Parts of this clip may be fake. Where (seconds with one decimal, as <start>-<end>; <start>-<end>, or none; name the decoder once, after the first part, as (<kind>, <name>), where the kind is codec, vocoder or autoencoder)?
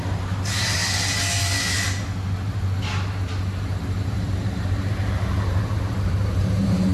0.0-0.8 (vocoder, BigVGAN v2); 3.7-6.9